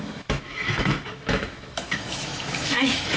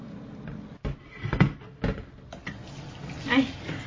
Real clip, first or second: second